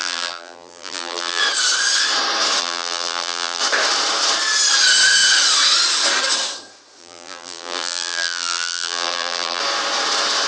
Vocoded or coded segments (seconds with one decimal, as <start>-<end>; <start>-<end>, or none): 0.0-1.4; 2.6-3.6; 7.0-9.6